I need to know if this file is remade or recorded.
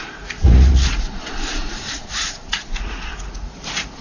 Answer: remade